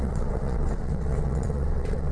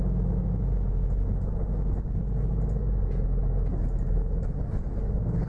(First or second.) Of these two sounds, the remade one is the first